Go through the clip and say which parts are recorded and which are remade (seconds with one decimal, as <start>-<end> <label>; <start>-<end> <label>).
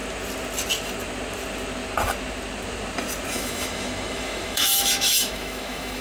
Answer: 0.0-3.3 recorded; 3.3-6.0 remade